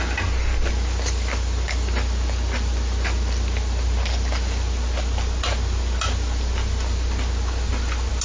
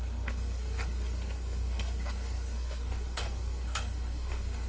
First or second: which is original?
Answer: first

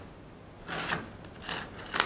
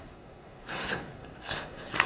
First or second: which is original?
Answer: first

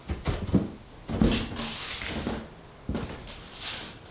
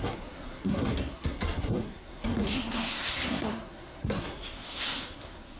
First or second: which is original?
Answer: first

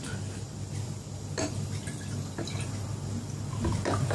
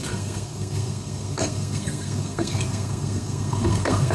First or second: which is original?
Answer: first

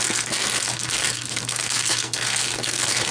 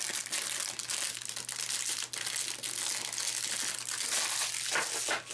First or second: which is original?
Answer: second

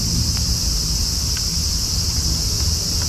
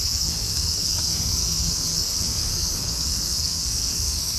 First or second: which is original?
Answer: first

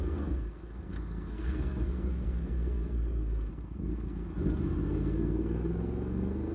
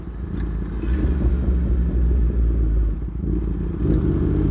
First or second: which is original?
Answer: second